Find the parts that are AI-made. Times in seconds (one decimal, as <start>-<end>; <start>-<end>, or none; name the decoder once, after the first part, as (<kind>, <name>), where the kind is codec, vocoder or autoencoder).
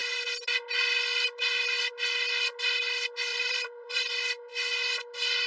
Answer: 3.3-4.0 (vocoder, BigVGAN v2)